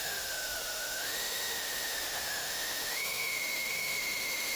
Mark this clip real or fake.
fake